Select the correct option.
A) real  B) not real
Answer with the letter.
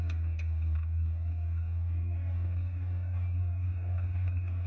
B